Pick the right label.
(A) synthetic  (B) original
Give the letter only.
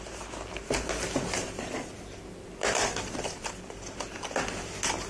B